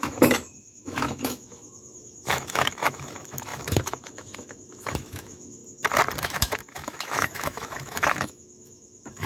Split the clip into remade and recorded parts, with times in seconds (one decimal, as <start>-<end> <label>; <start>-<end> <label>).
0.0-5.6 remade; 5.6-6.2 recorded; 6.2-9.3 remade